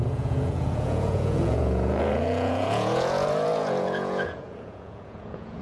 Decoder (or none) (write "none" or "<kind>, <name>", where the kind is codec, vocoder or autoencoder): vocoder, Vocos